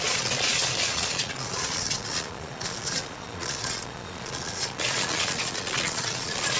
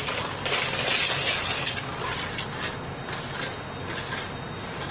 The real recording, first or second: second